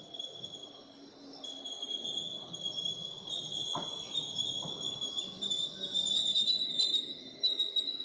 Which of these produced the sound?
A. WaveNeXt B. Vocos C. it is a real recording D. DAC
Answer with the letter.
C